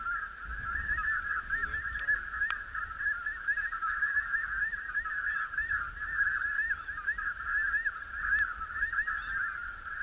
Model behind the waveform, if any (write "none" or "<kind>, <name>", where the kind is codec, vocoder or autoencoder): none